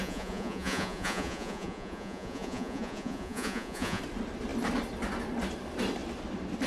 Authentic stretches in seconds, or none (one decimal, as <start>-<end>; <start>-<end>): 4.0-6.7